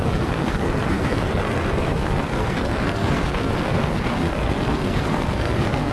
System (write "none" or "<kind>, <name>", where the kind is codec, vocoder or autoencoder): codec, SNAC